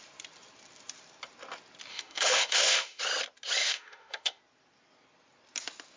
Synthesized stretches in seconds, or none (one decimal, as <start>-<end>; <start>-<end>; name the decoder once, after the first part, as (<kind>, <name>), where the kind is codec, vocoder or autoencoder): 1.9-3.0 (autoencoder, DAC-VAE); 3.6-4.4